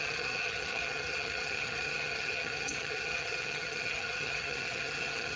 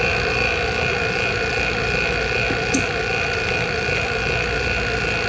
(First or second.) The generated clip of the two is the first